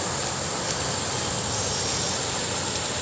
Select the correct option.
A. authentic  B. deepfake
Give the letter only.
A